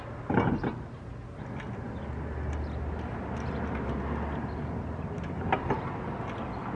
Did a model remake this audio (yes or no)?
no